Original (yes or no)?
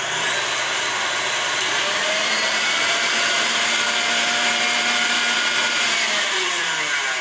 no